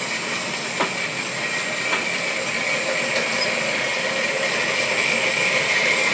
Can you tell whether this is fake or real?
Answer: real